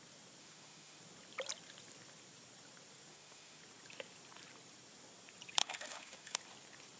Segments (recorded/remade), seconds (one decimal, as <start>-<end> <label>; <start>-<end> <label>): 0.0-0.4 recorded; 0.4-1.0 remade; 1.0-3.1 recorded; 3.1-3.6 remade; 3.6-5.6 recorded; 5.6-6.4 remade; 6.4-7.0 recorded